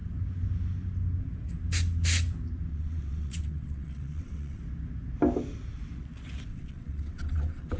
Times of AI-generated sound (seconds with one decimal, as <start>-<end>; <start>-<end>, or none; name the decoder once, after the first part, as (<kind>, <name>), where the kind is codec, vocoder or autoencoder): 2.7-4.6 (vocoder, WaveNeXt); 6.5-7.8